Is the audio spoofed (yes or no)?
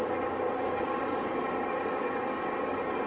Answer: yes